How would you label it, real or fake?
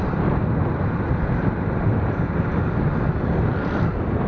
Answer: real